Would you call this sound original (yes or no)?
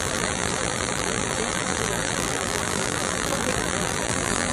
no